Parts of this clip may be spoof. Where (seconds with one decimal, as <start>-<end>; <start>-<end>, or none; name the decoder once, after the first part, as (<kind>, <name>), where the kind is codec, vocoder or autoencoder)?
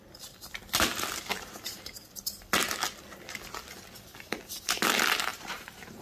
1.3-2.2 (vocoder, BigVGAN v2); 5.3-6.0